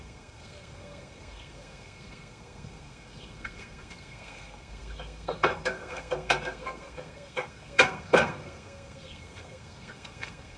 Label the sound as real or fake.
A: fake